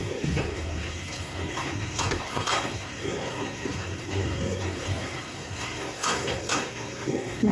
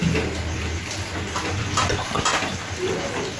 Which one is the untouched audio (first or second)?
second